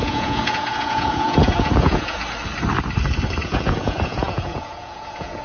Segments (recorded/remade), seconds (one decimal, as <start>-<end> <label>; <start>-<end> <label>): 0.0-2.2 remade; 2.2-3.4 recorded; 3.4-5.4 remade